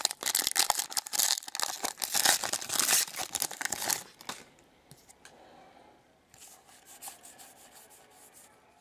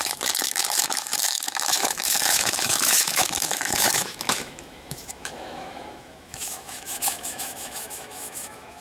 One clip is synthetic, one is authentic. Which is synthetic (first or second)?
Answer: second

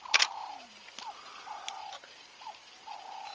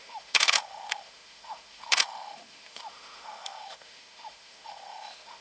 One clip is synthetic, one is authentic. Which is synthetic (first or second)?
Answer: second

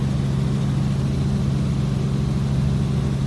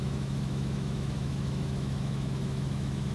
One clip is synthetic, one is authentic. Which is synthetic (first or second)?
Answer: second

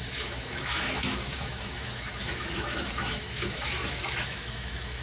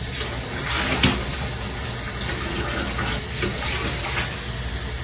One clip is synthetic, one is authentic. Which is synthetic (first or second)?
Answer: first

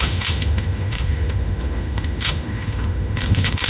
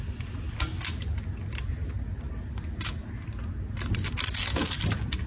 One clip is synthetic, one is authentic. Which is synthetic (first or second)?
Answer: first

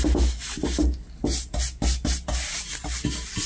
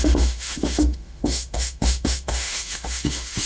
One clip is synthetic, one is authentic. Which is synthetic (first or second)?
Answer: second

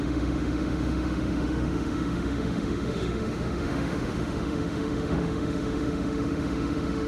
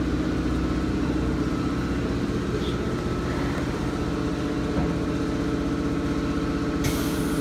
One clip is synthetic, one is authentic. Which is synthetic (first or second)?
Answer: first